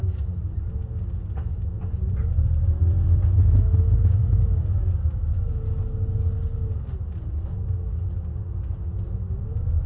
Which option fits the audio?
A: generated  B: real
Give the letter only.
B